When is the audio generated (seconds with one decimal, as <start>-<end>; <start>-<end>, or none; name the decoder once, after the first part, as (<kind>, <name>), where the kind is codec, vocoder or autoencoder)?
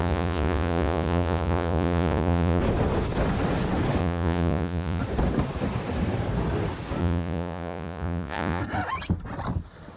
0.0-2.6 (vocoder, Vocos); 4.0-5.0; 7.0-8.6